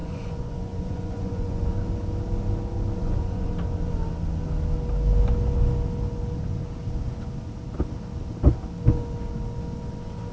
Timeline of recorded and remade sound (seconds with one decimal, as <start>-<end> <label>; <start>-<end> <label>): 0.0-1.7 remade; 1.7-3.0 recorded; 3.0-3.5 remade; 3.5-10.3 recorded